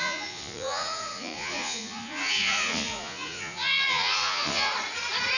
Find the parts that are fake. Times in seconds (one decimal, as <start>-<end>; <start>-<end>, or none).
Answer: 0.0-4.7